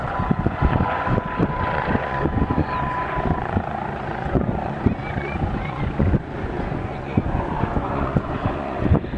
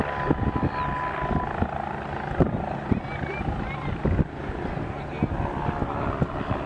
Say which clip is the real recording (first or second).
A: second